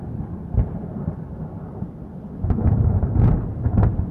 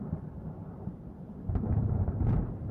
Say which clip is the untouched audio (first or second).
first